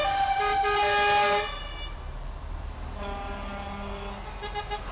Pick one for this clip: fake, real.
real